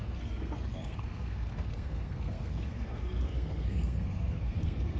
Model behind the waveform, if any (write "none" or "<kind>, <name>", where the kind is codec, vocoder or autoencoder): codec, SNAC